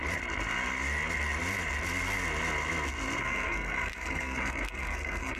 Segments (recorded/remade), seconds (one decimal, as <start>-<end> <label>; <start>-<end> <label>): 0.0-3.2 recorded; 3.2-5.4 remade